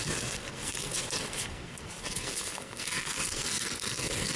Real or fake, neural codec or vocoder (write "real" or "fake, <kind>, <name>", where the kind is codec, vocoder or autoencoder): fake, codec, SNAC